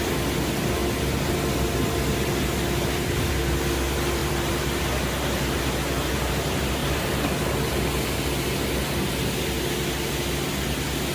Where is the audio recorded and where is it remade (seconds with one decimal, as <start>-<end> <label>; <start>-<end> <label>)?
0.0-0.8 recorded; 0.8-3.3 remade; 3.3-4.2 recorded; 4.2-4.8 remade; 4.8-6.8 recorded; 6.8-7.7 remade; 7.7-11.1 recorded